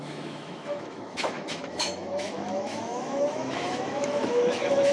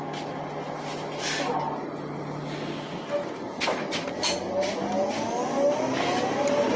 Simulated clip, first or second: first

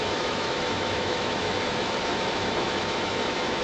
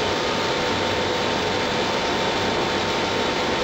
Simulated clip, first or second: first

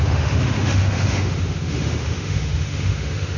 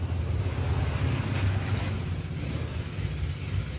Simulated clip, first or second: first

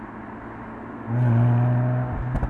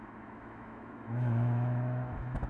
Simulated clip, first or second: second